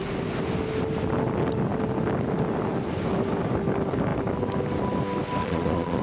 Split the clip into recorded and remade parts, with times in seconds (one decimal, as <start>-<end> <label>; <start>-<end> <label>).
0.0-5.4 recorded; 5.4-6.0 remade